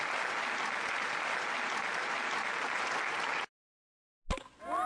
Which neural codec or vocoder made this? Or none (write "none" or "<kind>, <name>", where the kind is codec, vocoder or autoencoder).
none